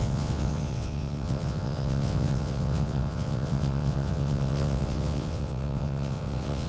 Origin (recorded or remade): remade